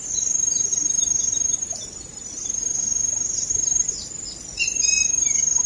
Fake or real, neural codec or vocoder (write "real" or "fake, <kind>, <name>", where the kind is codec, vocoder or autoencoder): real